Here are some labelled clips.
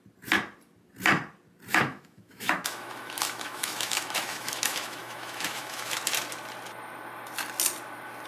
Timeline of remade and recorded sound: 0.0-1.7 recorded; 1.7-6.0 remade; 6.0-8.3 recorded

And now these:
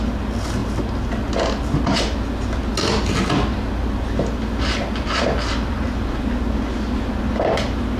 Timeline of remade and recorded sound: 0.0-8.0 recorded

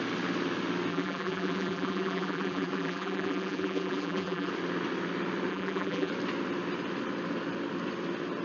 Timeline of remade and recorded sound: 0.0-0.9 recorded; 0.9-4.5 remade; 4.5-5.5 recorded; 5.5-6.1 remade; 6.1-8.4 recorded

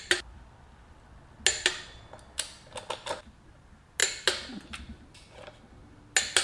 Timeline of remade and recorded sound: 0.0-6.4 recorded

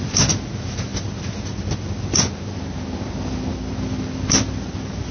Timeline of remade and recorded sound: 0.0-5.1 recorded

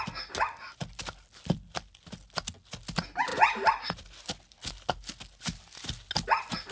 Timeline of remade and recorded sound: 0.0-6.7 recorded